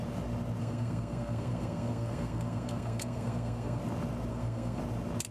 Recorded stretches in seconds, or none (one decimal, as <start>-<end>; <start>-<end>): 0.0-0.6; 3.8-4.3; 4.8-5.3